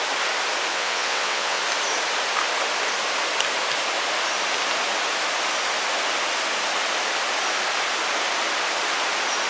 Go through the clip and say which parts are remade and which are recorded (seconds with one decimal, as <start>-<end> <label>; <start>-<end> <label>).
0.0-0.7 recorded; 0.7-1.6 remade; 1.6-9.5 recorded